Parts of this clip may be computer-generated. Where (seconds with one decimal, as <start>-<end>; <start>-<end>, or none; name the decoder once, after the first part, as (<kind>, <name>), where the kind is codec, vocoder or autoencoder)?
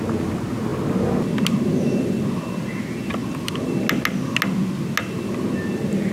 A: none